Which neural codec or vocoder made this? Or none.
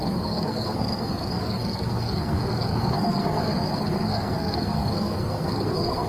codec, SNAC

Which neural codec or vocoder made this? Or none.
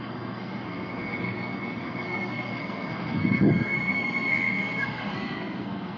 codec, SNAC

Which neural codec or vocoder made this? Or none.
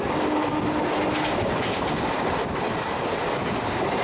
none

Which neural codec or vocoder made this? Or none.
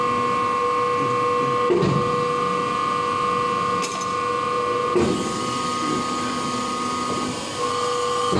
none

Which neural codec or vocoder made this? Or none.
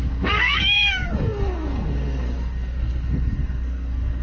codec, SNAC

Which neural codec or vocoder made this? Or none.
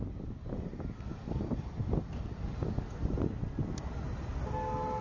none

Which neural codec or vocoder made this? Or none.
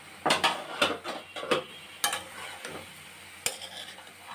none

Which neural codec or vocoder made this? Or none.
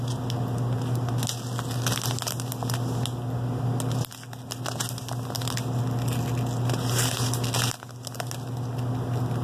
none